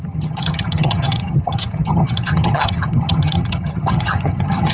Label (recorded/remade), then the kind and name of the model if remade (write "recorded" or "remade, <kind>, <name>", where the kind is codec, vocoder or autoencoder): remade, vocoder, HiFi-GAN